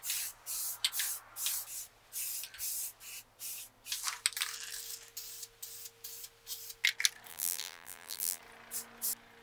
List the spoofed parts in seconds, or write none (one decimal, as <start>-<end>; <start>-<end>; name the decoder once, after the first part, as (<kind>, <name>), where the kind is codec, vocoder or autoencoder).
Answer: 7.3-8.4 (vocoder, BigVGAN v2)